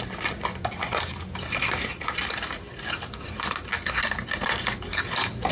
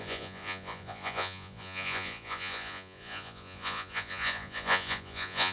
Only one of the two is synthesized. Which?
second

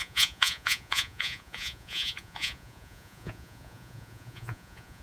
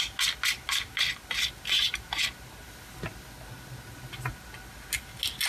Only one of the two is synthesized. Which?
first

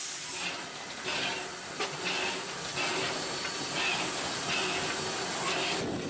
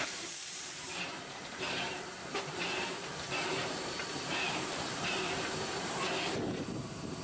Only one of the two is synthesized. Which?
second